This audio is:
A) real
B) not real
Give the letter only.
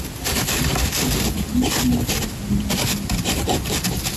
B